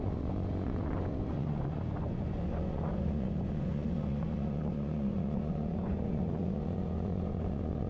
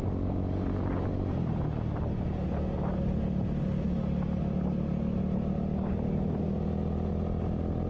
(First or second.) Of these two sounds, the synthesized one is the first